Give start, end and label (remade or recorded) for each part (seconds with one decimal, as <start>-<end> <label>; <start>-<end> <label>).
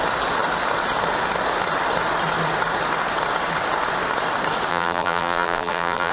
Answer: 0.0-4.7 recorded; 4.7-6.1 remade